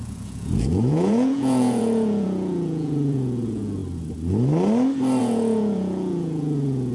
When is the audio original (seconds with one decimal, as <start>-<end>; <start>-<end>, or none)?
3.8-5.2